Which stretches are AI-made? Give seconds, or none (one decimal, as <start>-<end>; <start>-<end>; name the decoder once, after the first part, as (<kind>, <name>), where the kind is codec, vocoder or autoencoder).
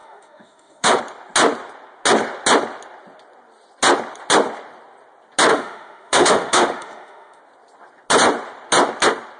0.0-1.0 (autoencoder, DAC-VAE); 5.5-7.4